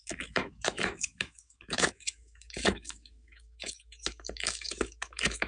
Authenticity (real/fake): fake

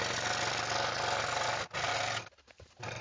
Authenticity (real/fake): real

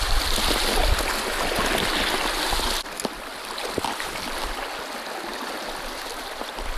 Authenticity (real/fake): real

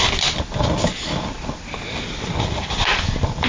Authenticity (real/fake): real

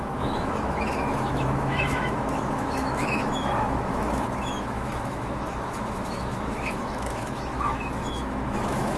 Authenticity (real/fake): fake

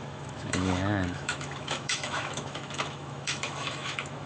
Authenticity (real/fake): fake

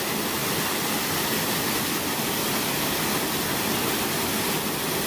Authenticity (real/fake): real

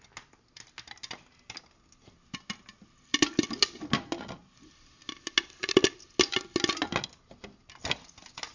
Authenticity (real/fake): real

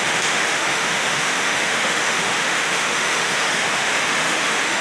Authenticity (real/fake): fake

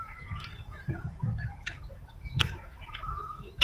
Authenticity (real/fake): fake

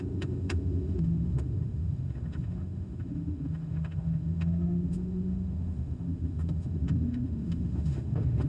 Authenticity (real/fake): fake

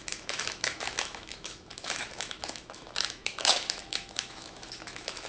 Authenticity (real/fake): fake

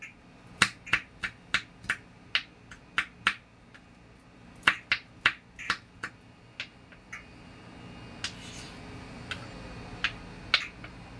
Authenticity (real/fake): real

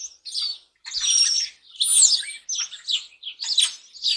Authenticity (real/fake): real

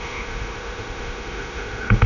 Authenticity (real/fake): fake